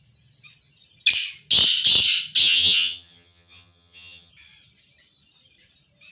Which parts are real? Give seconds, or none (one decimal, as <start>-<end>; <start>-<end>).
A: 0.0-2.4; 4.3-6.1